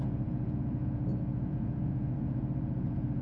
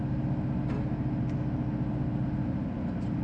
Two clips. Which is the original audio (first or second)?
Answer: second